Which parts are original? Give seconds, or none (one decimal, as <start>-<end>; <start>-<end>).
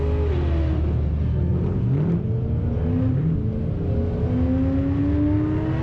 0.0-5.8